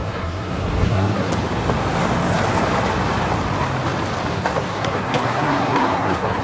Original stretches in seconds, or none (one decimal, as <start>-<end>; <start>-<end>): 1.3-4.3